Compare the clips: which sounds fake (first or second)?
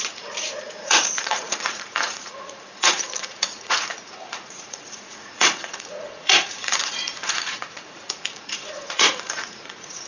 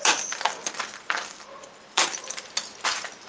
first